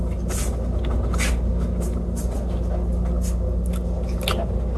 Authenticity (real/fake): real